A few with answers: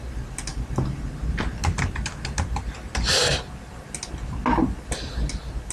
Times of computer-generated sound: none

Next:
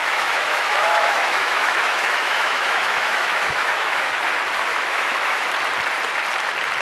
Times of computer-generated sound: 0.0-4.1 (autoencoder, DAC-VAE); 4.7-5.5

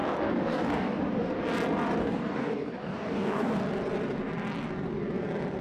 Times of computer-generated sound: 0.0-1.0 (codec, DAC); 2.0-3.6

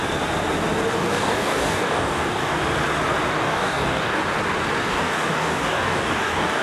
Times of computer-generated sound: 0.9-2.5 (codec, DAC); 3.3-4.2; 4.9-6.6

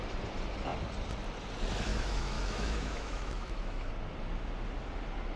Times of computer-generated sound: 1.9-3.9 (autoencoder, DAC-VAE)

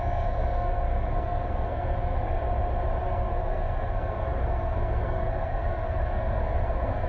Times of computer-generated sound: 0.0-2.4 (codec, SNAC); 3.0-7.1

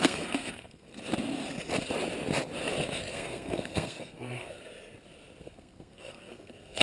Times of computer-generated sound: 0.0-0.9 (codec, SNAC); 3.1-4.6; 5.4-6.8